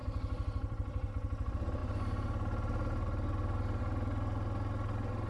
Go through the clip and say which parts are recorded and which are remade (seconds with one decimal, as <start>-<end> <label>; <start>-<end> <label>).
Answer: 0.0-1.1 remade; 1.1-5.3 recorded